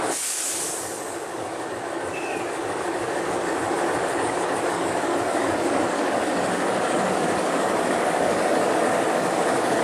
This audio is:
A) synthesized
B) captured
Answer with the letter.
A